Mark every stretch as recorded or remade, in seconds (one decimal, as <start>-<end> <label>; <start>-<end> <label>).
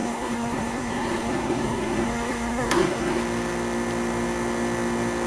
0.0-3.2 remade; 3.2-5.3 recorded